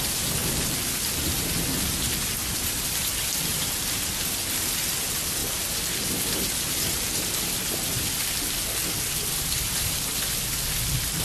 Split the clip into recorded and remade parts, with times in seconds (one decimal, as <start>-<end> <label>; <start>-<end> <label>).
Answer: 0.0-11.2 recorded